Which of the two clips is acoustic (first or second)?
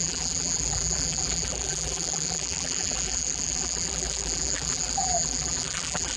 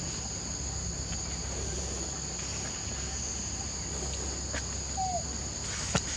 second